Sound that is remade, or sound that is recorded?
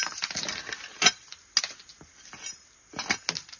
recorded